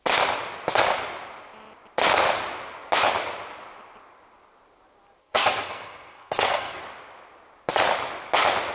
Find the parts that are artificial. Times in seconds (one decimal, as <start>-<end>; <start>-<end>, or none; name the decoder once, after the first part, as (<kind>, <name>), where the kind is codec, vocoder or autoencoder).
5.2-6.8 (codec, SNAC)